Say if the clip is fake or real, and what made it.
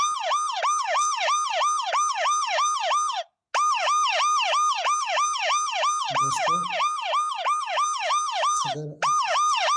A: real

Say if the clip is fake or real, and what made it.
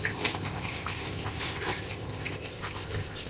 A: fake, codec, ZipCodec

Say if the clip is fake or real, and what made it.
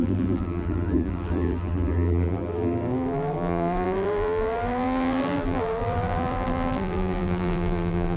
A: fake, vocoder, BigVGAN v2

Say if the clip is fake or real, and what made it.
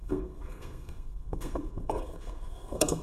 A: fake, codec, SNAC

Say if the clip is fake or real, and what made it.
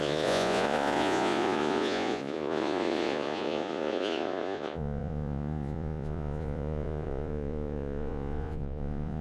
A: fake, vocoder, Vocos